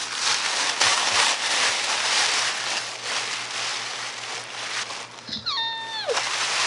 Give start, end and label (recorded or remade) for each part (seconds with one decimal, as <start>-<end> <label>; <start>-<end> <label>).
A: 0.0-0.9 recorded; 0.9-2.5 remade; 2.5-3.7 recorded; 3.7-4.3 remade; 4.3-6.7 recorded

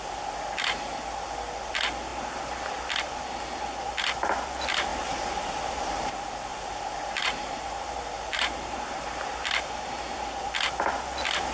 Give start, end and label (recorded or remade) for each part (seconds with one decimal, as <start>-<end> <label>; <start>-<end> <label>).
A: 0.0-6.5 recorded; 6.5-10.5 remade; 10.5-11.5 recorded

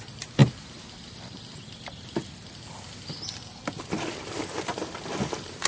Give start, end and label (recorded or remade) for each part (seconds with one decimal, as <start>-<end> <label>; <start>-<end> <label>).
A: 0.0-5.7 recorded

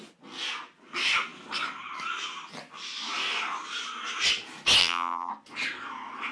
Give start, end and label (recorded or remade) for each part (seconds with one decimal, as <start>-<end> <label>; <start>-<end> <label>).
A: 0.0-4.8 recorded; 4.8-5.3 remade; 5.3-6.3 recorded